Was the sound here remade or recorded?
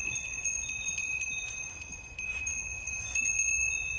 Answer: remade